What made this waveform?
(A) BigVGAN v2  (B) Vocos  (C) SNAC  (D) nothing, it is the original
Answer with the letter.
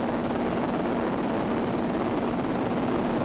D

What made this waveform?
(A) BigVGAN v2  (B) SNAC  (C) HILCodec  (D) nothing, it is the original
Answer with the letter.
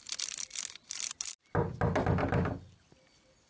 D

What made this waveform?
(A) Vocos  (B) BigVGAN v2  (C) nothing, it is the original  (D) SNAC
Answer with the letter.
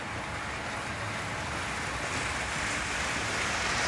B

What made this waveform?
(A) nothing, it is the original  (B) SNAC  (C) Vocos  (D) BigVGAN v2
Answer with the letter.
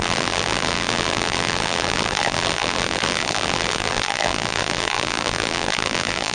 D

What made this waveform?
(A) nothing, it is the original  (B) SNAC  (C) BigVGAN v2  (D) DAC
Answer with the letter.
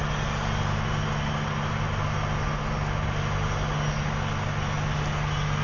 A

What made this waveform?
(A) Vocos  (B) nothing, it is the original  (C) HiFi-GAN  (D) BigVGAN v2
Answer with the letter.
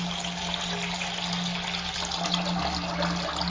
B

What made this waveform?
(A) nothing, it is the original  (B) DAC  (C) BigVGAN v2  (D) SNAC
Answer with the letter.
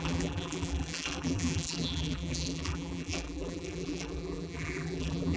C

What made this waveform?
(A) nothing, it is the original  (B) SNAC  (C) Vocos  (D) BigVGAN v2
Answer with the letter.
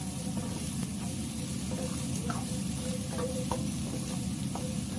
D